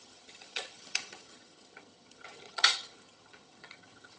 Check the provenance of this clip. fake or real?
fake